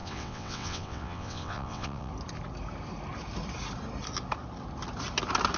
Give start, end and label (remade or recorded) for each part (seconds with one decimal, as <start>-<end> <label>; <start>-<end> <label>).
0.0-2.1 remade; 2.1-5.6 recorded